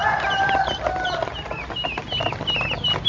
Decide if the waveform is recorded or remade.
recorded